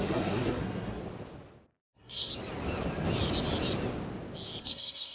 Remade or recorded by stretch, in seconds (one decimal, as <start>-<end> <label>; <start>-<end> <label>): 0.0-1.0 remade; 1.0-1.9 recorded; 1.9-2.3 remade; 2.3-4.6 recorded; 4.6-5.1 remade